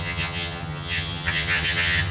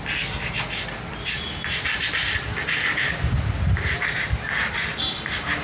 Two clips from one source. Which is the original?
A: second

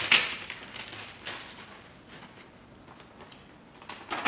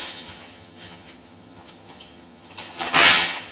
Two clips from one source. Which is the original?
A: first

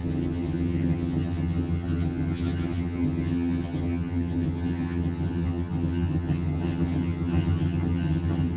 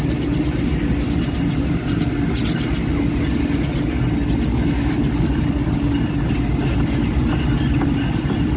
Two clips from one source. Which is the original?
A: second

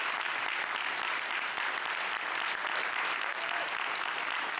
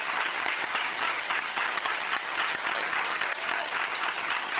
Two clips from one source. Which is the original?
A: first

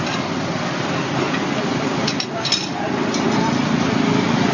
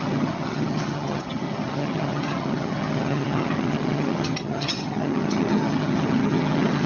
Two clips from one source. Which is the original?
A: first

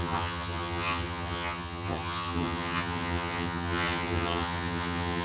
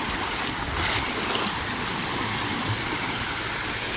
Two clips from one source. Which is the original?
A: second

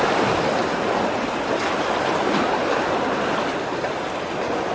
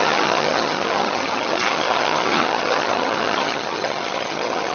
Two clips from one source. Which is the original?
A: first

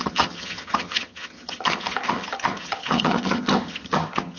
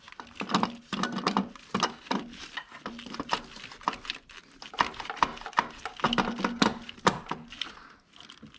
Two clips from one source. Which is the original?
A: second